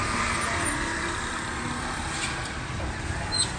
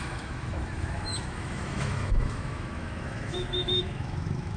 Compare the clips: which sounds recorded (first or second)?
first